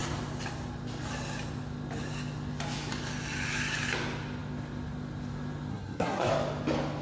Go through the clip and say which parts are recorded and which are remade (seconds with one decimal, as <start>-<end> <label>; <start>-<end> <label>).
0.0-5.7 recorded; 5.7-6.3 remade; 6.3-7.0 recorded